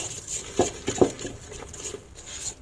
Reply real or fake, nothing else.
real